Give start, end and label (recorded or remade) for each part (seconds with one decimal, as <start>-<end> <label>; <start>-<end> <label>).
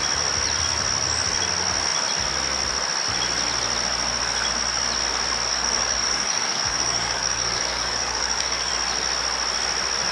0.0-5.5 recorded; 5.5-8.7 remade; 8.7-10.1 recorded